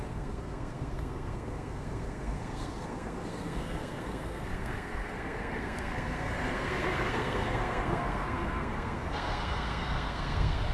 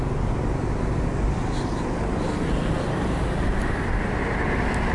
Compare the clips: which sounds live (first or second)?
second